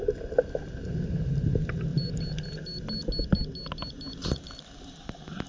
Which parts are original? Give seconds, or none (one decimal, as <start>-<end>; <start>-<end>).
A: 0.0-5.5